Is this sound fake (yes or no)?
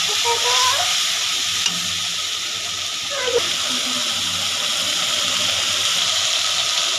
no